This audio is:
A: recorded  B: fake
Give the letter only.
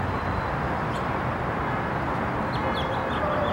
A